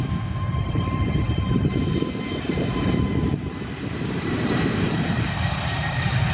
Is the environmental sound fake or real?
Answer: fake